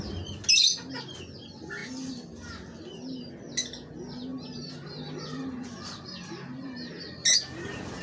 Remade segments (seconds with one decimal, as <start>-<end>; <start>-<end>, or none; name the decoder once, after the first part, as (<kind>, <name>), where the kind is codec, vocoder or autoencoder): 4.3-6.7 (vocoder, BigVGAN v2)